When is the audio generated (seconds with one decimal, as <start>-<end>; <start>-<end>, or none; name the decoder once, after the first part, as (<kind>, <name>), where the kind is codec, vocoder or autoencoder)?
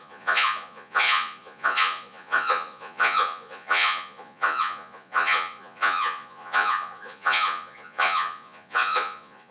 0.0-9.5 (vocoder, Vocos)